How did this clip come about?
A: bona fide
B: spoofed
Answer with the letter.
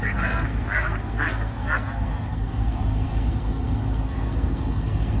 B